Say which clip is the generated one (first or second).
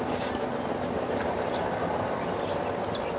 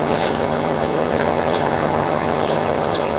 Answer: second